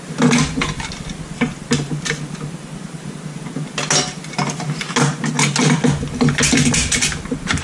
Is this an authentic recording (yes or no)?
yes